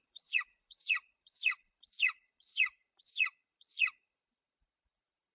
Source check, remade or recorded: remade